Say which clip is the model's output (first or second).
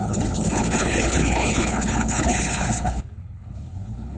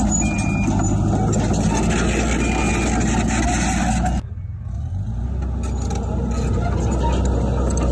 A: first